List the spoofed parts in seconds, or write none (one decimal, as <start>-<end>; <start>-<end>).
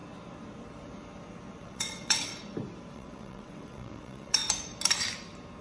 1.6-2.3; 2.9-4.4